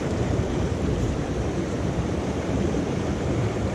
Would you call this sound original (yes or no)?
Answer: no